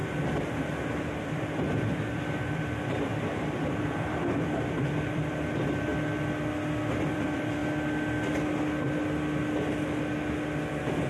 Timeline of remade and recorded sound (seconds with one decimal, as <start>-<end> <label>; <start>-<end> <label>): 0.0-3.1 remade; 3.1-3.7 recorded; 3.7-5.9 remade; 5.9-7.0 recorded; 7.0-7.6 remade; 7.6-10.7 recorded; 10.7-11.1 remade